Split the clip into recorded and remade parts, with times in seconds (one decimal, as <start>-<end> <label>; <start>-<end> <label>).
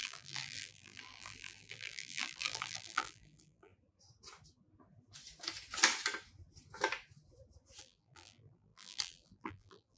0.0-3.7 remade; 3.7-7.8 recorded; 7.8-10.0 remade